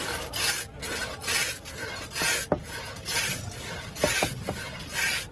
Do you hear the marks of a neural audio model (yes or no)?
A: no